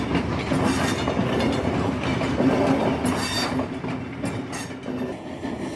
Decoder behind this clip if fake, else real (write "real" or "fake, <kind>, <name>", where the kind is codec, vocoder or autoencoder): real